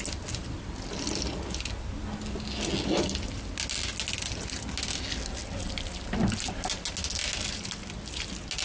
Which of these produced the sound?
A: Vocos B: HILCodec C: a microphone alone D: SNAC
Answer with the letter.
C